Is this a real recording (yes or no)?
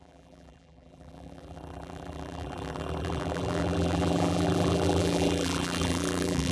no